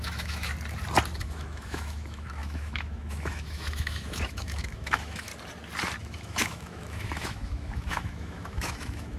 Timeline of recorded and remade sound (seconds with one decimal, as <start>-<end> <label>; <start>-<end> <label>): 0.0-0.5 remade; 0.5-1.2 recorded; 1.2-5.3 remade; 5.3-6.0 recorded; 6.0-9.2 remade